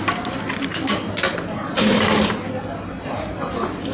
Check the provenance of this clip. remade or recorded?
recorded